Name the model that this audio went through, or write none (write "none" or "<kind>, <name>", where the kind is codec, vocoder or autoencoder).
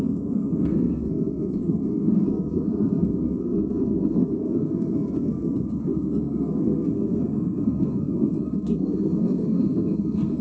codec, SNAC